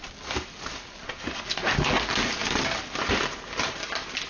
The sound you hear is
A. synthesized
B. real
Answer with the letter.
B